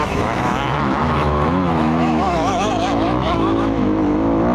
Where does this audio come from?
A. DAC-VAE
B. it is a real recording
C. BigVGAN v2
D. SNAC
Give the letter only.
A